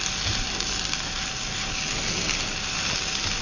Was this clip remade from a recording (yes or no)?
no